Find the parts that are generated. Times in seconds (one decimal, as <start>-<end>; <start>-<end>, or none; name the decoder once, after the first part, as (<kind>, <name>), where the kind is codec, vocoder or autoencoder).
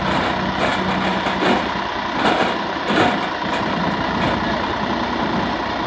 none